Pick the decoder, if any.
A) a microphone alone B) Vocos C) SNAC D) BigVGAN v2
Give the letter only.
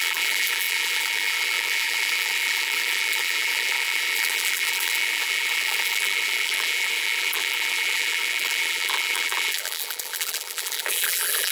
D